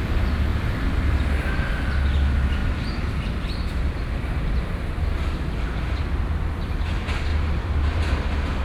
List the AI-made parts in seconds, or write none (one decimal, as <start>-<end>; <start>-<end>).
0.5-1.9; 2.6-6.1; 7.3-8.1